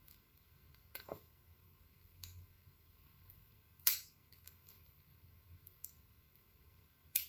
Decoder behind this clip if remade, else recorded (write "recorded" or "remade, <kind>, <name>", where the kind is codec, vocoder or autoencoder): remade, codec, SNAC